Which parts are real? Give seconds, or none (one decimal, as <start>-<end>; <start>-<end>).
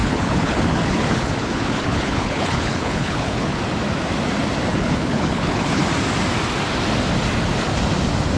3.6-4.7; 5.8-8.4